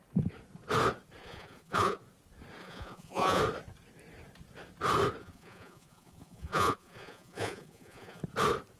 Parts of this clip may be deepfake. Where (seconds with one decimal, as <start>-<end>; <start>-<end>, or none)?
1.2-2.0; 2.6-3.4; 5.2-8.2